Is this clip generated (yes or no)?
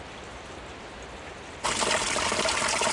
no